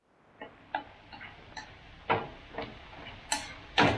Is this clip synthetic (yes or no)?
no